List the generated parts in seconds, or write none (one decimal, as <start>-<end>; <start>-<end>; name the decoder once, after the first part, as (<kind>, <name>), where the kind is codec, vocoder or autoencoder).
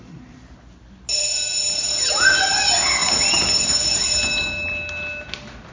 none